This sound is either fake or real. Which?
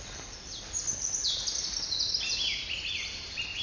real